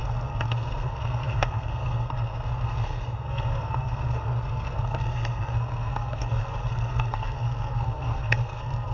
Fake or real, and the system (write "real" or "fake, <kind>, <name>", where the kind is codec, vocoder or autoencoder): fake, codec, SNAC